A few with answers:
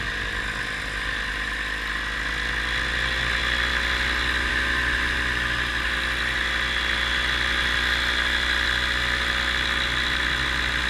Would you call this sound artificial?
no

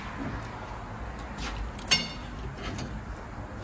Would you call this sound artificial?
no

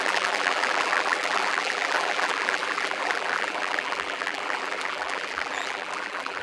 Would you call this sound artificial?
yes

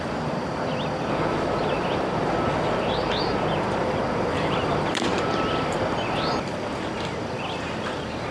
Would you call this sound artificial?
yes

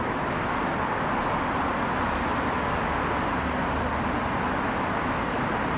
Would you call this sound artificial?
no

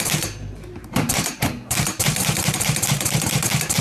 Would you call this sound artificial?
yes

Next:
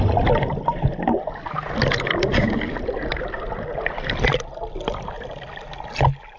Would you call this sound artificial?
no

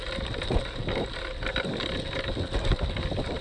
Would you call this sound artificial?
no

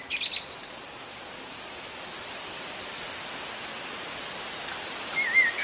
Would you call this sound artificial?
no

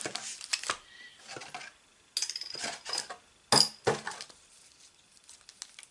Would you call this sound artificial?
no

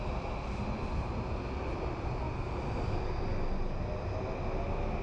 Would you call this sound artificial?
no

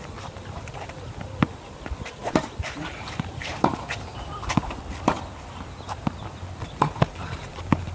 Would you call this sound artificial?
yes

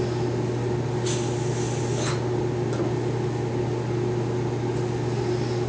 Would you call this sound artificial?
no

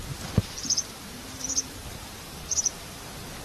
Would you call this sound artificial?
yes